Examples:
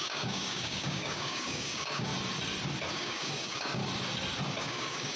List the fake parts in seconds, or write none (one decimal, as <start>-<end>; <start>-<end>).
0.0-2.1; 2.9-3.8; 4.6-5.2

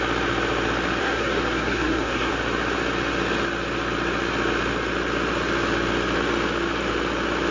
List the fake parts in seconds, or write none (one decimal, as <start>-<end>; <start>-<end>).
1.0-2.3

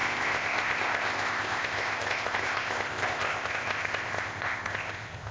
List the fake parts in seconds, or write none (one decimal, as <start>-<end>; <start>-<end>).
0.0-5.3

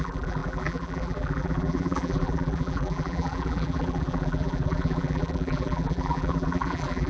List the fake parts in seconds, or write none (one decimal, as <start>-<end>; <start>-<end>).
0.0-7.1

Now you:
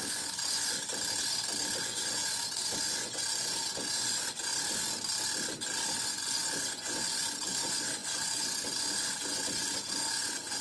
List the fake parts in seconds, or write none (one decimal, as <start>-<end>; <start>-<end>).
0.0-0.9; 1.8-4.5; 6.0-10.6

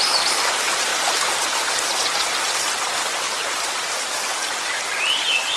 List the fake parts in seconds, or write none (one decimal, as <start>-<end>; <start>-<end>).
none

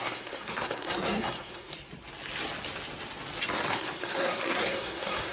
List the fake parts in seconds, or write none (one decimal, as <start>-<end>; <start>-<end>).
0.0-1.7; 3.7-5.3

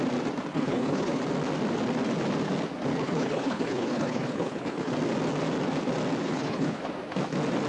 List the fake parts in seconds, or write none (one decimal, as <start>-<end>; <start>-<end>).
0.5-1.2; 2.9-4.9; 6.2-6.8